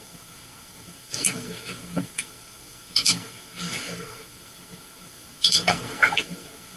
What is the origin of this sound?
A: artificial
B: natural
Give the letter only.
A